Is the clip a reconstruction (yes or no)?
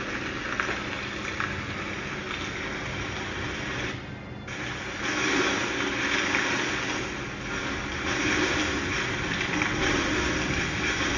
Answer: no